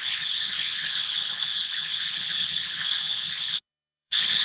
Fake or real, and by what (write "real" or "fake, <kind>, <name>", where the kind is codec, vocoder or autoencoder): fake, codec, HILCodec